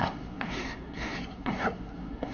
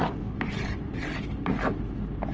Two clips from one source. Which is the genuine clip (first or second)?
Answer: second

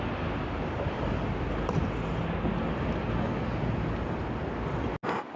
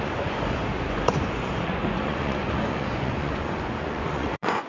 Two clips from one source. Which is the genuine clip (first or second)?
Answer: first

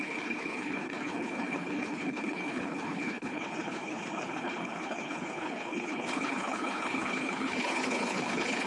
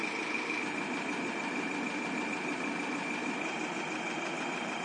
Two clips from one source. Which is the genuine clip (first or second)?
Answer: second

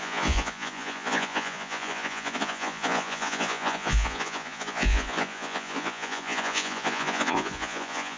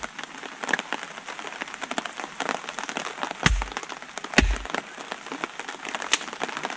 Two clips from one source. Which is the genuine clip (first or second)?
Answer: second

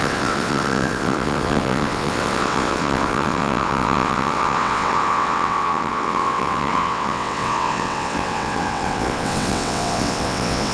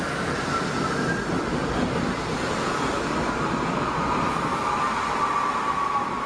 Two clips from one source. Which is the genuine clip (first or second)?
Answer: second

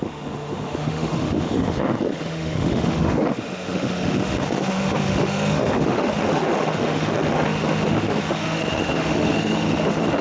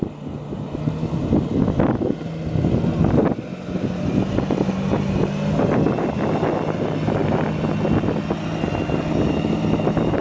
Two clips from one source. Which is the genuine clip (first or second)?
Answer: second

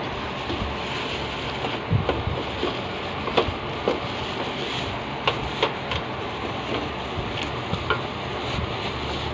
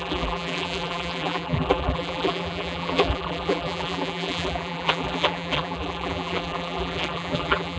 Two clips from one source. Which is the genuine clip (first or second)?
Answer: first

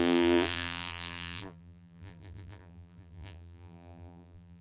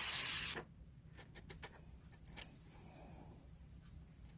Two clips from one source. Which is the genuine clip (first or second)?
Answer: second